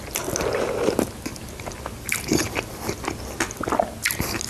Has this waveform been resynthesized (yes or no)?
no